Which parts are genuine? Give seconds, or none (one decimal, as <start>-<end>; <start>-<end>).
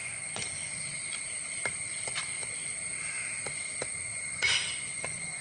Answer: 0.7-4.1